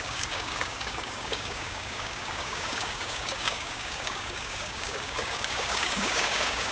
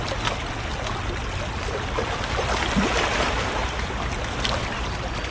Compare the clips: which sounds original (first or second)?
second